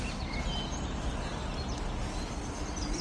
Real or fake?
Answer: real